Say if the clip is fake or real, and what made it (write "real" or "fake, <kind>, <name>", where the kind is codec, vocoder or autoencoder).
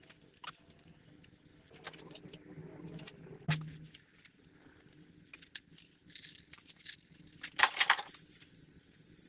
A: real